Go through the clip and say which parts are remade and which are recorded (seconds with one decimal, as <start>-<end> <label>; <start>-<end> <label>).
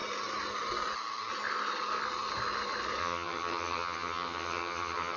0.0-3.0 recorded; 3.0-5.2 remade